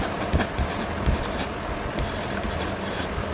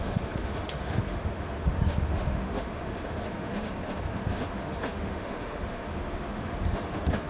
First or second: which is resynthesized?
second